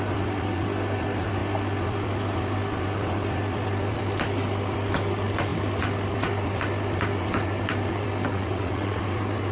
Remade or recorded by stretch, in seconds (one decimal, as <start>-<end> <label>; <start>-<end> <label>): 0.0-8.3 recorded; 8.3-9.0 remade; 9.0-9.5 recorded